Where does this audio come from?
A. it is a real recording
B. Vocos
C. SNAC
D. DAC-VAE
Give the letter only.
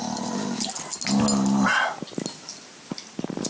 A